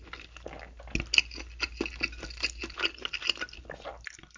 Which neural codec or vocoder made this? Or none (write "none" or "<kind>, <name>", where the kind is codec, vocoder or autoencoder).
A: none